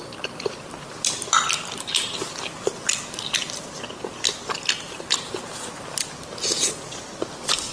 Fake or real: real